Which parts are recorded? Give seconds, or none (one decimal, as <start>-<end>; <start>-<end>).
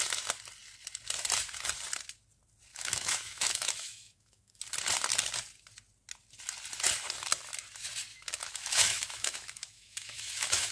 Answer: 0.0-2.7; 4.6-8.1